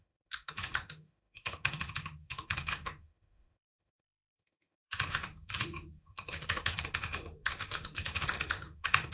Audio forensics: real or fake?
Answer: fake